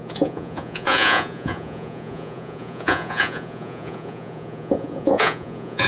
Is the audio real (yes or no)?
no